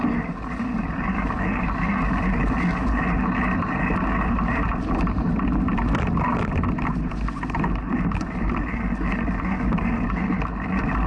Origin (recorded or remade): recorded